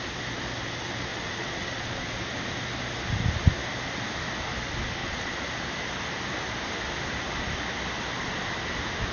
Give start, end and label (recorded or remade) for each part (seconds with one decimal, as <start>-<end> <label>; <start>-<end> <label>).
0.0-1.1 recorded; 1.1-2.2 remade; 2.2-5.0 recorded; 5.0-5.5 remade; 5.5-9.1 recorded